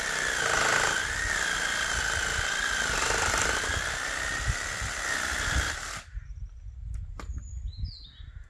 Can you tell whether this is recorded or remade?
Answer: recorded